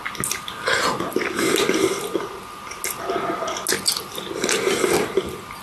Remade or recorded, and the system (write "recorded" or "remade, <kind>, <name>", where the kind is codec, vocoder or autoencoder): recorded